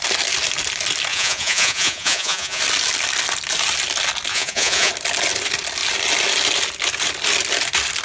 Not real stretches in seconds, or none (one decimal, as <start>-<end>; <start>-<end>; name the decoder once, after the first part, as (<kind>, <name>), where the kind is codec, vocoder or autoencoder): 1.1-2.6 (vocoder, Vocos); 4.3-4.9